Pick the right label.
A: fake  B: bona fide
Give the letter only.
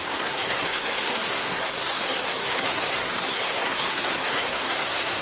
A